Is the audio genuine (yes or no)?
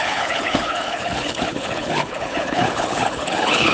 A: no